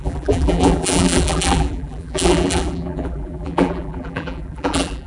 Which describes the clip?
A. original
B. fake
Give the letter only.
B